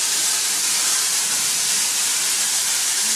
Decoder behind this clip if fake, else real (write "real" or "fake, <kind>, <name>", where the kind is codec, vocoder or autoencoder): fake, vocoder, BigVGAN v2